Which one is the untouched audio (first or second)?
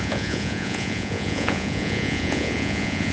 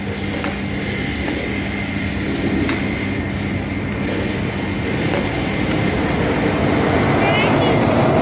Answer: second